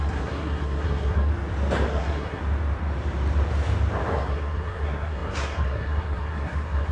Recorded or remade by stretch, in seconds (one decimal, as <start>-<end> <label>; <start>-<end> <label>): 0.0-1.3 remade; 1.3-1.9 recorded; 1.9-2.4 remade; 2.4-4.1 recorded; 4.1-6.9 remade